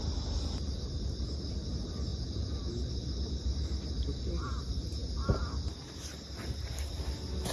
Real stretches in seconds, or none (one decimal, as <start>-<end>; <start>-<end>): 0.0-5.0; 6.1-7.5